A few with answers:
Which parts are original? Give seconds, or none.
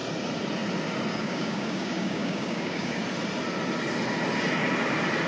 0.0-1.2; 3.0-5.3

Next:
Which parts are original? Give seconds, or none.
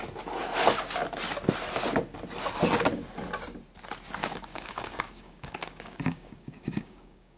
0.0-4.2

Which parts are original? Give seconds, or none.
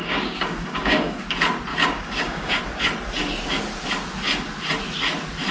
1.2-1.7; 2.6-5.5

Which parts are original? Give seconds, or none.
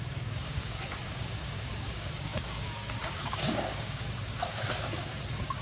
none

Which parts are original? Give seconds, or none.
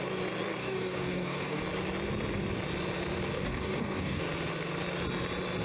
0.0-0.6; 1.6-3.3; 4.2-5.6